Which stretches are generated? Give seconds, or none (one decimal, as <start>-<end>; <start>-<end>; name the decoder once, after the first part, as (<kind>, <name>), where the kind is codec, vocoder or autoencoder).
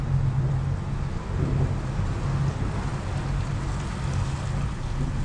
none